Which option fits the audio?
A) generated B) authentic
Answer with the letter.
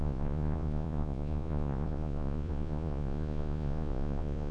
A